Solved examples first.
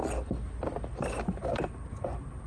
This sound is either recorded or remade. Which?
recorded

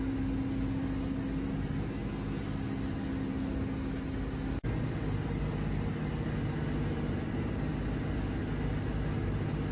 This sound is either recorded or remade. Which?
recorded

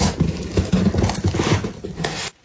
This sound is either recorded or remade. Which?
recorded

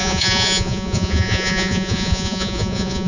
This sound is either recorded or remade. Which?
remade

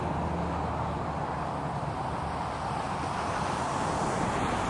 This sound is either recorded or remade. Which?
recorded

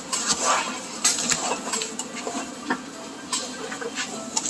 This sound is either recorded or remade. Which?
recorded